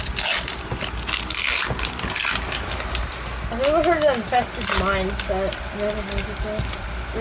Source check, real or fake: real